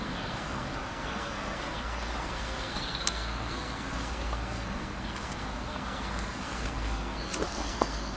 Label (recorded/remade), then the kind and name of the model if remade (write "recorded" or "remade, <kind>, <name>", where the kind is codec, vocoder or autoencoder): remade, codec, SNAC